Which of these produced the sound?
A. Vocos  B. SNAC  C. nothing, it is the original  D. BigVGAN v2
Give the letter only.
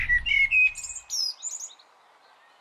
C